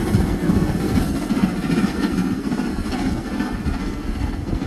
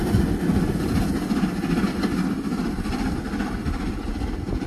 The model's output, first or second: first